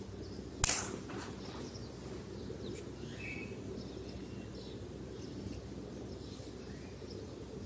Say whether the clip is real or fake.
real